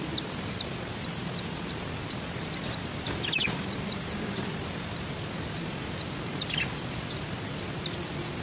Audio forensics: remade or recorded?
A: recorded